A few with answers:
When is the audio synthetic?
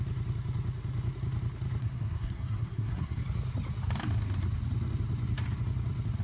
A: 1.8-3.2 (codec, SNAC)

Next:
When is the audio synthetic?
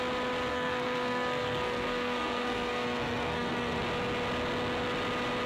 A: 0.5-3.8 (codec, SNAC)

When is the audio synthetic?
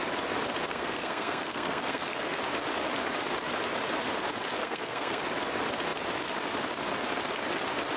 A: 0.7-2.4 (codec, SNAC); 4.6-5.2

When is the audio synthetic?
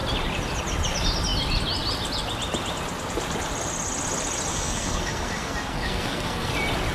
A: 4.5-6.5 (codec, SNAC)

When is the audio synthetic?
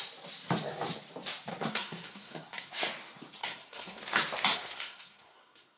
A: 1.5-2.7 (codec, SNAC); 3.4-4.0; 4.5-5.8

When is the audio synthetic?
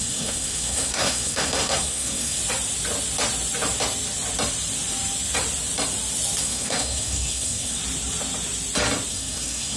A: 0.0-2.4 (codec, SNAC); 6.4-7.8; 9.1-9.8